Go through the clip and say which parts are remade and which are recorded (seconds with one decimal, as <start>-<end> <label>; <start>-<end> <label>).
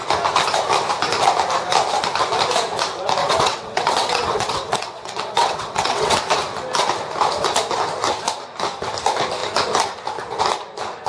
0.0-3.2 recorded; 3.2-6.2 remade; 6.2-11.1 recorded